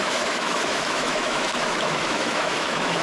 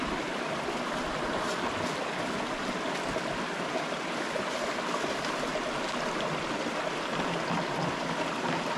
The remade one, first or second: first